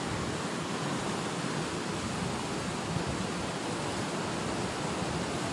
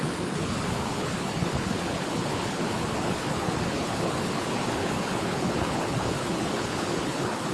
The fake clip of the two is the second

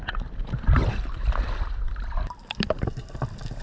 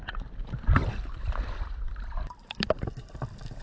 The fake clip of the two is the second